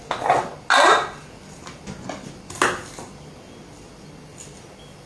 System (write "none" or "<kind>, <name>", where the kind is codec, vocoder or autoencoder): none